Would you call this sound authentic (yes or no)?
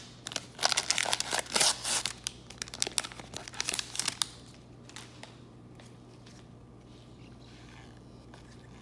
yes